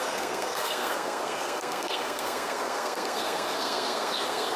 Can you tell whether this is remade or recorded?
remade